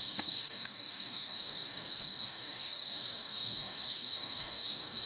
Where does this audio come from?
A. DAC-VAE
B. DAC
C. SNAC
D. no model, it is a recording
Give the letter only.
B